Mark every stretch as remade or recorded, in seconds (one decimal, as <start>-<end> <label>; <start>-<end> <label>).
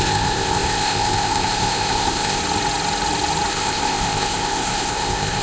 0.0-2.4 remade; 2.4-3.5 recorded; 3.5-5.4 remade